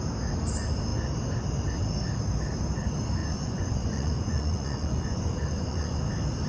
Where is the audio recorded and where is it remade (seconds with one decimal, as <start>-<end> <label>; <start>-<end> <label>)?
0.0-3.2 recorded; 3.2-6.0 remade; 6.0-6.5 recorded